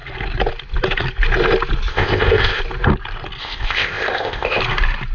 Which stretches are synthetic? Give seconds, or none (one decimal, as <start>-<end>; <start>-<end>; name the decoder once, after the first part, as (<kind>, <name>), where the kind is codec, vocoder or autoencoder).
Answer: 1.9-2.6 (codec, ZipCodec); 3.4-4.6